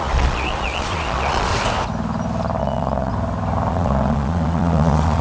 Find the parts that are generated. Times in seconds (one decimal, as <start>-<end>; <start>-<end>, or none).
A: 0.0-1.5; 2.6-3.1; 3.7-5.2